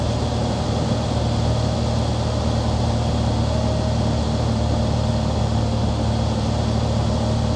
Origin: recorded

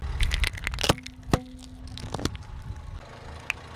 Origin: recorded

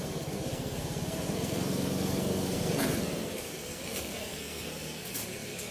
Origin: remade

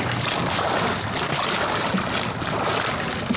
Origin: recorded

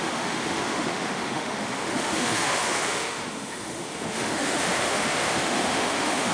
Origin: remade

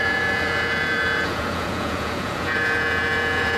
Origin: remade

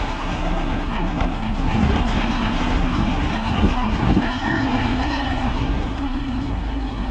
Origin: remade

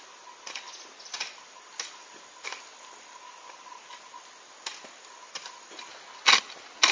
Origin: recorded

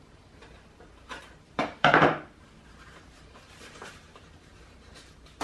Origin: remade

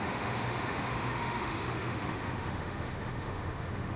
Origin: remade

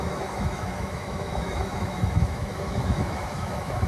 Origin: remade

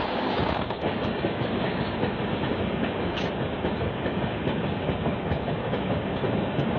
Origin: remade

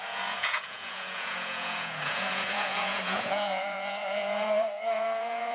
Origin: remade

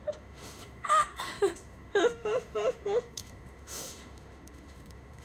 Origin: remade